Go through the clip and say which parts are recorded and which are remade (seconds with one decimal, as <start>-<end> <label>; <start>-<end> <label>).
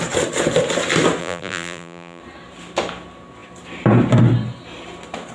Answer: 0.0-1.2 recorded; 1.2-2.2 remade; 2.2-5.3 recorded